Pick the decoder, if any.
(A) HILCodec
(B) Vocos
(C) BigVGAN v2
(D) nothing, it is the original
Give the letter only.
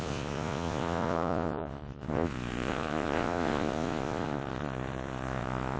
B